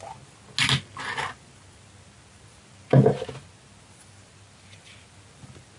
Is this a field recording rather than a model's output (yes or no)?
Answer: yes